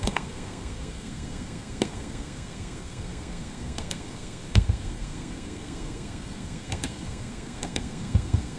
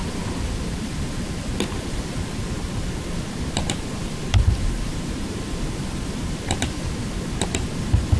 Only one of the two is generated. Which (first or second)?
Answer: first